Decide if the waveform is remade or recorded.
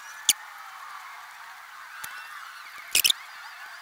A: recorded